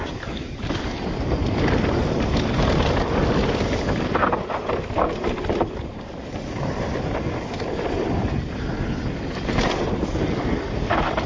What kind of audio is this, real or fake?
real